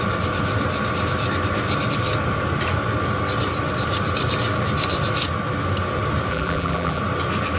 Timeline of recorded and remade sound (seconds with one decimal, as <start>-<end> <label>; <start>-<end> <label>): 0.0-6.3 recorded; 6.3-7.0 remade; 7.0-7.6 recorded